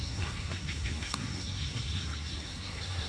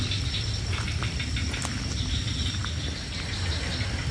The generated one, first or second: first